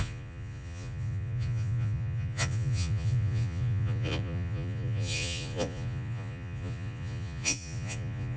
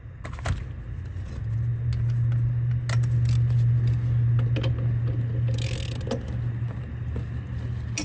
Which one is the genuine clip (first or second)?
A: second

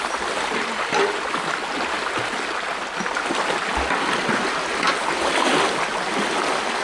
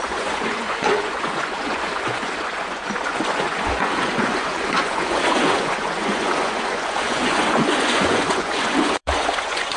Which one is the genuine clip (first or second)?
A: first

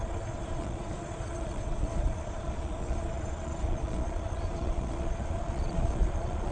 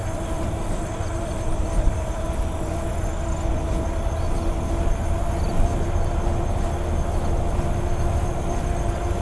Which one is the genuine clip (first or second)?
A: second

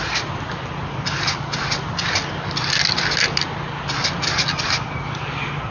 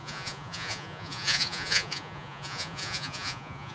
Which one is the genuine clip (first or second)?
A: first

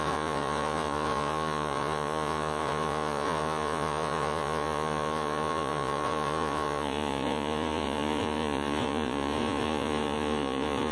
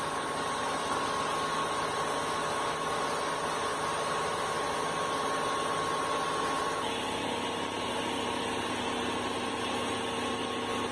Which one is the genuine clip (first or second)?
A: second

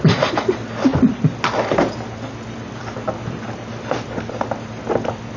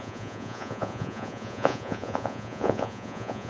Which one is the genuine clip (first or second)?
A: first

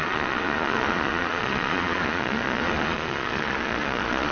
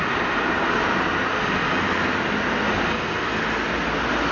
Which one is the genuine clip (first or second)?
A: second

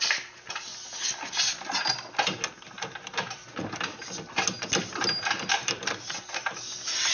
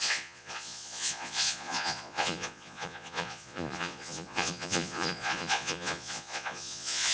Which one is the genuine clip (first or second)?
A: first